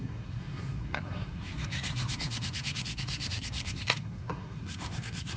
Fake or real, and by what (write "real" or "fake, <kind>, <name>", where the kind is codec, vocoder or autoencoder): fake, codec, SNAC